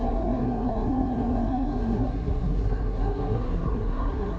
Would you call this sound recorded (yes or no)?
no